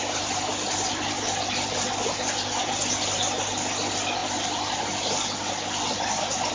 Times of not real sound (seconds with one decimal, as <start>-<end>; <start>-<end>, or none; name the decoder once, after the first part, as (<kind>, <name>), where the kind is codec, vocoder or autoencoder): none